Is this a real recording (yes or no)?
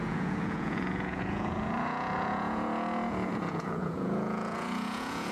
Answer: no